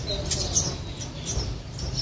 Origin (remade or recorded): recorded